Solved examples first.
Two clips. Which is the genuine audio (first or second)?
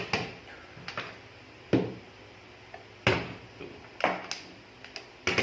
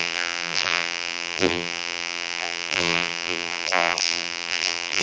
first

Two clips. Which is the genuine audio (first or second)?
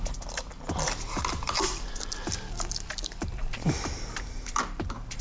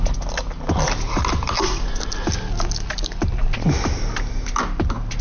second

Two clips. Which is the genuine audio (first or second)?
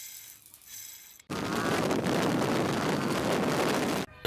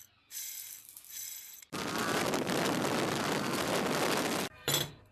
first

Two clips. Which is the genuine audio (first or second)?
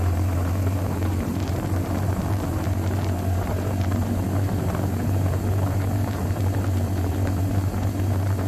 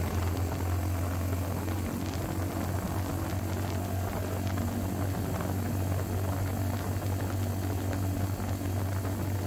second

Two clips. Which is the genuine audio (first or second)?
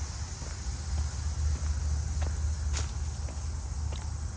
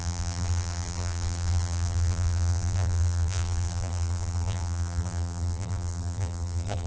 first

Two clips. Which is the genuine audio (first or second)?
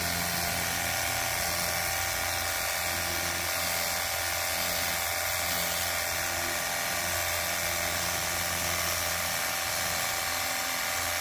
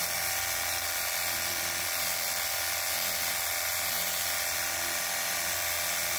first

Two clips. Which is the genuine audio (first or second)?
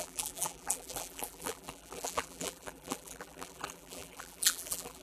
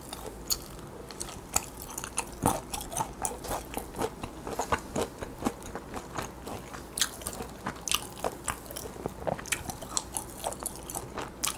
second